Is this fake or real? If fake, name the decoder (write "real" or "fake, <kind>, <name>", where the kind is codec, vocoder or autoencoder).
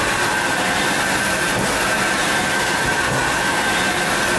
real